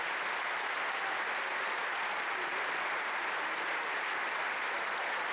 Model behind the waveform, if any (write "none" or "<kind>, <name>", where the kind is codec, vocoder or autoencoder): none